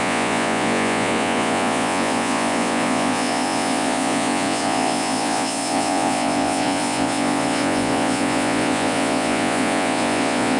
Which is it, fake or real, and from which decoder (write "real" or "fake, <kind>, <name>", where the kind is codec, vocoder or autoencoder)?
fake, vocoder, Vocos